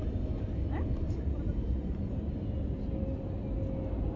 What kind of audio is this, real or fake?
real